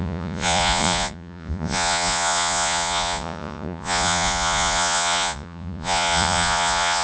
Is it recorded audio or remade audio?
remade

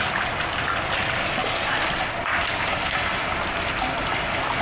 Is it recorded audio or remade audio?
recorded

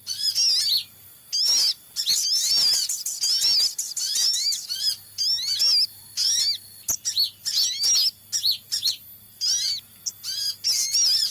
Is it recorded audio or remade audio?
recorded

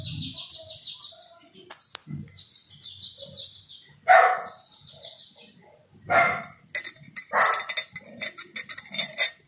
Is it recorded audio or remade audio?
recorded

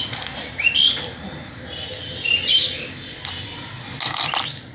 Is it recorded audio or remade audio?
recorded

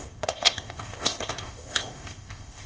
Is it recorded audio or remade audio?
remade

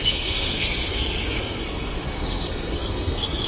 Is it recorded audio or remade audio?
remade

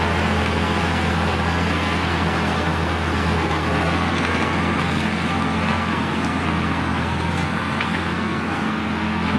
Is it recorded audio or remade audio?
remade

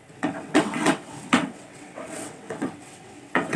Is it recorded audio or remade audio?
remade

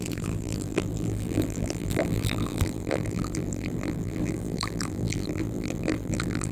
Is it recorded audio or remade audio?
remade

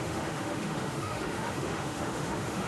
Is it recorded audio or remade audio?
remade